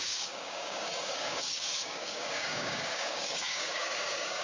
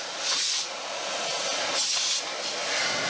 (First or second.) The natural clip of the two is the second